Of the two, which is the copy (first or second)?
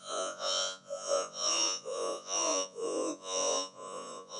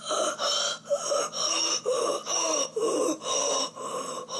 first